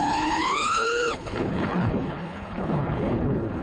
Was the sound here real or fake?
fake